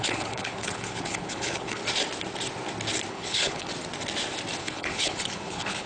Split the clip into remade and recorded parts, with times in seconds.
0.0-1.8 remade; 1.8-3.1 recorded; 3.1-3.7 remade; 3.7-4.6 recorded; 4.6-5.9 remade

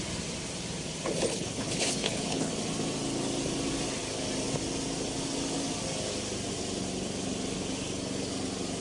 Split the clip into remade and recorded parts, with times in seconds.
0.0-1.3 recorded; 1.3-2.5 remade; 2.5-8.8 recorded

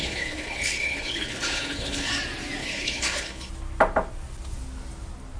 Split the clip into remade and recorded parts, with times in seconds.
0.0-2.1 remade; 2.1-2.6 recorded; 2.6-3.5 remade; 3.5-5.4 recorded

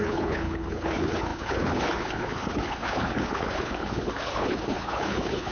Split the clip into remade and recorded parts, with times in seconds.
0.0-5.5 remade

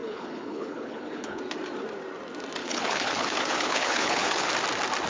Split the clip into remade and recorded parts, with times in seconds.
0.0-1.4 remade; 1.4-2.6 recorded; 2.6-4.5 remade; 4.5-5.1 recorded

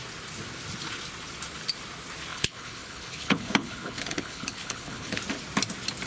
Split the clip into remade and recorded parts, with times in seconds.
0.0-2.3 recorded; 2.3-5.1 remade; 5.1-6.1 recorded

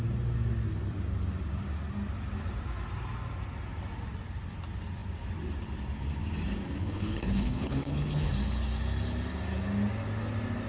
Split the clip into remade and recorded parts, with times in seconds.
0.0-6.8 recorded; 6.8-8.3 remade; 8.3-10.7 recorded

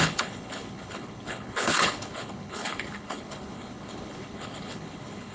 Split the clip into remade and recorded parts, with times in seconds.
0.0-5.3 remade